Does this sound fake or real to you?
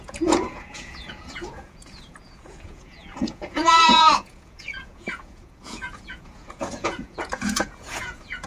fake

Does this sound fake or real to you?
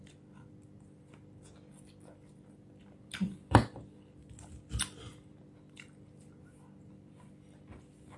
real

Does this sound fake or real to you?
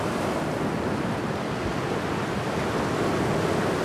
real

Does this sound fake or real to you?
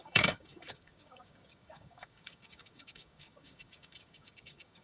fake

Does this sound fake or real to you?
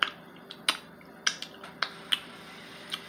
real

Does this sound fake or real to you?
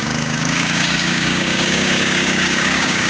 fake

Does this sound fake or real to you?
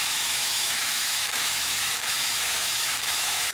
fake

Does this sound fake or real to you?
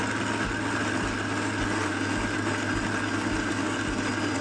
real